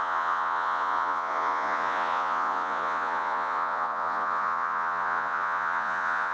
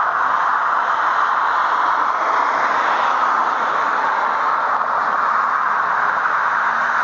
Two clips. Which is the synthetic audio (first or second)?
first